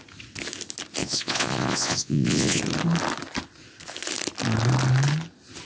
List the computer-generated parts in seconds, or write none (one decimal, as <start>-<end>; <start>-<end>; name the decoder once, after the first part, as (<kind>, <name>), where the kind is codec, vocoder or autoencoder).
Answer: 1.0-2.6 (vocoder, Vocos)